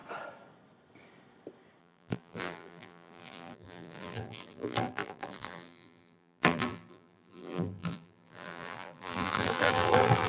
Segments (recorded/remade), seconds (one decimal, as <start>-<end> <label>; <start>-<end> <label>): 0.0-1.8 recorded; 1.8-10.3 remade